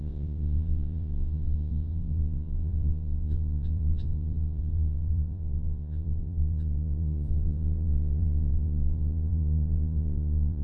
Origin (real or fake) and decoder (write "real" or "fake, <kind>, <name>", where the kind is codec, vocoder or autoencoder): fake, vocoder, Vocos